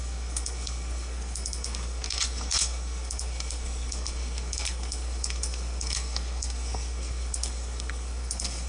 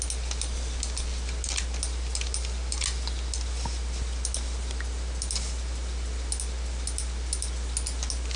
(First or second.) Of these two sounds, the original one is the second